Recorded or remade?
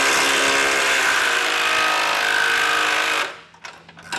recorded